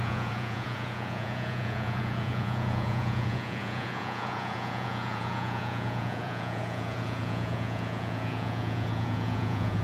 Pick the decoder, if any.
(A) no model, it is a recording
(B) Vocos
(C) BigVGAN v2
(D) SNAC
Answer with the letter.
B